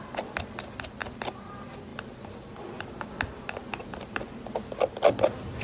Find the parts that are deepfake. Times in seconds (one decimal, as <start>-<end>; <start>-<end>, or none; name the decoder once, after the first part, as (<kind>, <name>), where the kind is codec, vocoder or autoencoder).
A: none